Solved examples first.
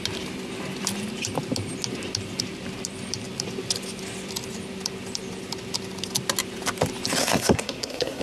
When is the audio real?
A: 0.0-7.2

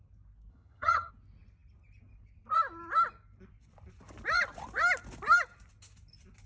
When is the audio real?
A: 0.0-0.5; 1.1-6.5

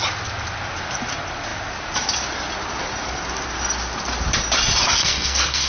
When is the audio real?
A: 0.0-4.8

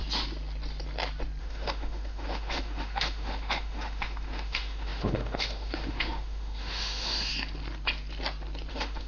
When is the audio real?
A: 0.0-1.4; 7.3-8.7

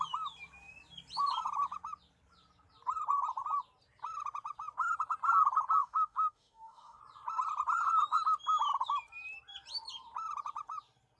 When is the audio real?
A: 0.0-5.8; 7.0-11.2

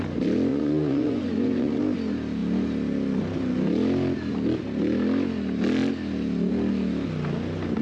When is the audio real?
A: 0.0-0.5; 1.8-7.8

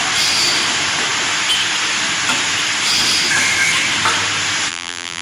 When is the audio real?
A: 0.0-4.7